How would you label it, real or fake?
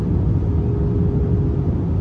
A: real